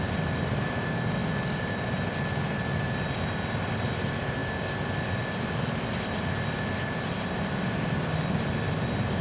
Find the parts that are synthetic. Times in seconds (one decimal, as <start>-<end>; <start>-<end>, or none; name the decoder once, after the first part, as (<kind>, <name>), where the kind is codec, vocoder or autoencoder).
none